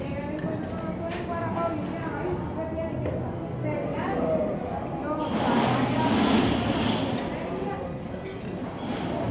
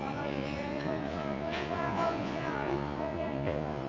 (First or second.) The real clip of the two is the first